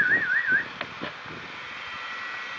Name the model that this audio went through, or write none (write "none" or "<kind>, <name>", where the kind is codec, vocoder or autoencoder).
none